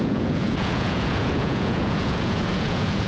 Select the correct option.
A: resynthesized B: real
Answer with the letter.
A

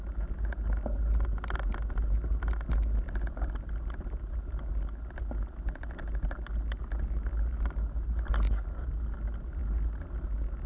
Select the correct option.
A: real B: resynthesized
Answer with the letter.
A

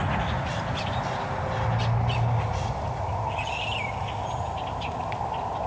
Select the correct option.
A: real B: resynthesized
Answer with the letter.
A